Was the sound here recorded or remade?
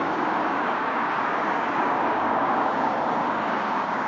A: remade